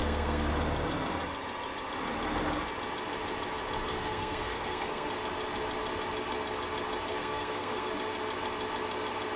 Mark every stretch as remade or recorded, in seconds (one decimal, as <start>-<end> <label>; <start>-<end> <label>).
0.0-0.5 remade; 0.5-3.9 recorded; 3.9-5.1 remade; 5.1-7.1 recorded; 7.1-7.9 remade; 7.9-9.4 recorded